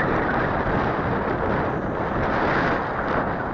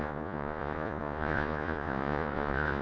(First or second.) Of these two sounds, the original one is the first